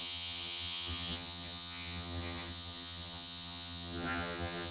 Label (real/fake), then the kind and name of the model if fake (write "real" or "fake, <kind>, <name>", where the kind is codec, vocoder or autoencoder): fake, vocoder, HiFi-GAN